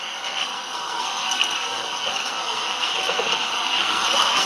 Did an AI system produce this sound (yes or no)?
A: yes